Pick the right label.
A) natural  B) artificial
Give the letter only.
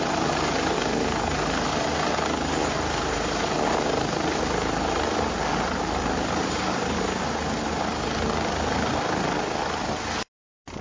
A